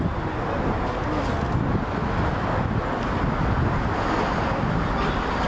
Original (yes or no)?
yes